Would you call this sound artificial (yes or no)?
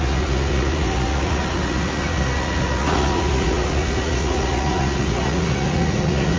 yes